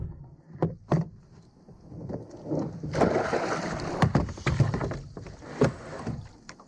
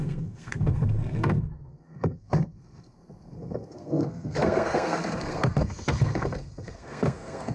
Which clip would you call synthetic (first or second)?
second